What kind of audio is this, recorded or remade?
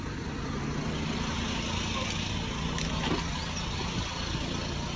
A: recorded